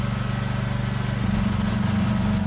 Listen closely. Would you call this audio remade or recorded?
recorded